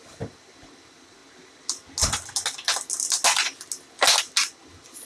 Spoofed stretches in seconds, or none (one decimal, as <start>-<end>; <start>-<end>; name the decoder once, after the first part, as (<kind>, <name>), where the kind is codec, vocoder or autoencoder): none